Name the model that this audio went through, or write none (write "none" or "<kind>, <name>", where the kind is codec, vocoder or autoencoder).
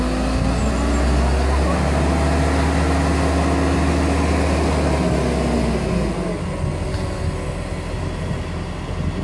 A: none